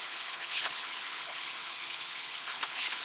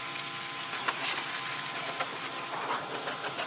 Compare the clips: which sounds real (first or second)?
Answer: second